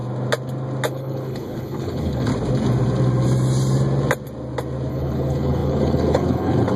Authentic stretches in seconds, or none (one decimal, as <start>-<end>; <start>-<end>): 0.0-0.9; 2.3-4.9